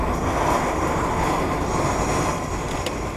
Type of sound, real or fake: real